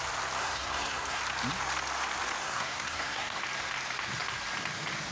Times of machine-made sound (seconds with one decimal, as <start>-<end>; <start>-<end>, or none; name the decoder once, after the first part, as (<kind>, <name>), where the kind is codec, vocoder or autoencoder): 0.4-1.2 (codec, SNAC); 2.4-3.4